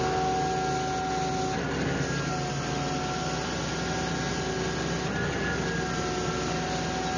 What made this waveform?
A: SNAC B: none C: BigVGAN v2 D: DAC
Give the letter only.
B